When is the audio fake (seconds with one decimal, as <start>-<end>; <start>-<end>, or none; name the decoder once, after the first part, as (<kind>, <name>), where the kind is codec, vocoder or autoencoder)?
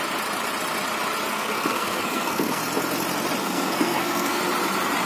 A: 1.3-2.6 (codec, SNAC); 3.4-4.4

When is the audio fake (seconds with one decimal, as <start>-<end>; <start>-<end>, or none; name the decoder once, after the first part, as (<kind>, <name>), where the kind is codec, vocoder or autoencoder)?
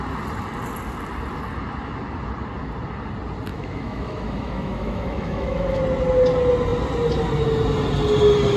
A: 3.5-5.8 (autoencoder, DAC-VAE)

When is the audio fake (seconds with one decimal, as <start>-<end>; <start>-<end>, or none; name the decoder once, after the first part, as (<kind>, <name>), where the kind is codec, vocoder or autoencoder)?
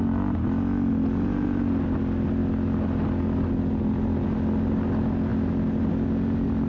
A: none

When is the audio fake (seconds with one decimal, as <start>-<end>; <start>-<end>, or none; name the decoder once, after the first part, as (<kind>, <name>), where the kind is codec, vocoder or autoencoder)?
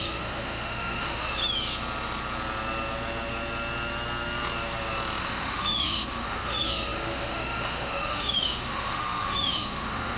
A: 0.0-1.4 (autoencoder, DAC-VAE); 5.2-10.2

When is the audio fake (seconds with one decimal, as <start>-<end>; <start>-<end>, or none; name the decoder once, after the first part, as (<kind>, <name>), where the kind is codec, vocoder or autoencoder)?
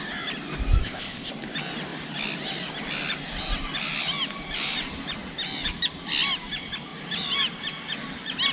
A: 0.8-1.3 (codec, ZipCodec)